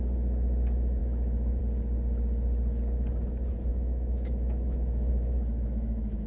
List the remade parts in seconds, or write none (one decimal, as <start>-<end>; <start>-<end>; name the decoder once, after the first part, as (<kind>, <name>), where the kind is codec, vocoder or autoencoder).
1.0-1.6 (autoencoder, DAC-VAE); 3.7-6.3